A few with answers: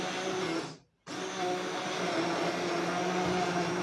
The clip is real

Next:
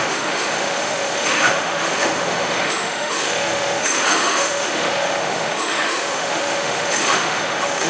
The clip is fake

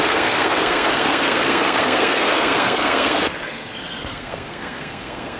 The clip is fake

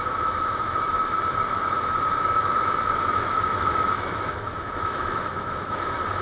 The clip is fake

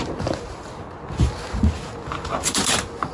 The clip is real